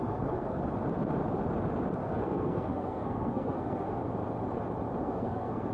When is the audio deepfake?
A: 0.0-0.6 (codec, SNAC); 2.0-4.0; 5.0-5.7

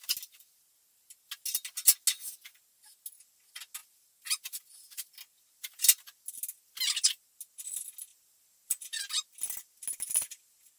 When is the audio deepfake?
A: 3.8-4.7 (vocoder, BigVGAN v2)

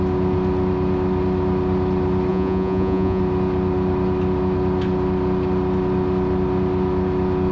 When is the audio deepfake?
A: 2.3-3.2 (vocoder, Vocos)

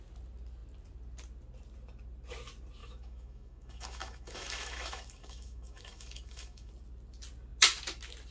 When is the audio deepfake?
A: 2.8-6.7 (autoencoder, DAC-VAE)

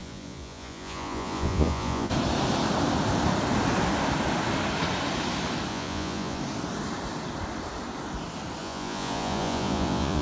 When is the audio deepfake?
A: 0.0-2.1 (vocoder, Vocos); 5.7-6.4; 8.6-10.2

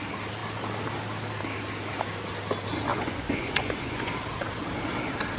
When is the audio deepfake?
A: 2.9-4.1 (vocoder, Vocos)